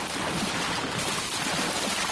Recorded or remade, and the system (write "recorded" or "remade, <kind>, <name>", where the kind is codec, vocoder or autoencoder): recorded